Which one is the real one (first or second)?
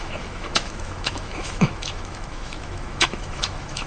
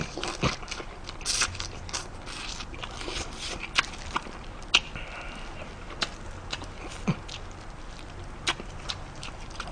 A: second